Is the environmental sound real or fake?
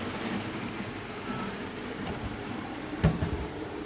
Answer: fake